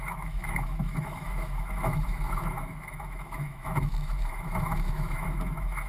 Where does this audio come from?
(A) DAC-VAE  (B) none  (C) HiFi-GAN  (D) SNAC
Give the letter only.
A